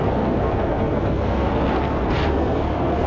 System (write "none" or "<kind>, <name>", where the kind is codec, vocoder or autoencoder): codec, SNAC